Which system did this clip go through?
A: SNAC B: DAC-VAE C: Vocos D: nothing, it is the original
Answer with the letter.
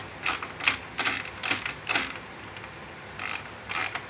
D